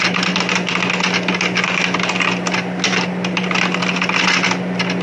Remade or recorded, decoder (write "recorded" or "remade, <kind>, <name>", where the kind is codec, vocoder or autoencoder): recorded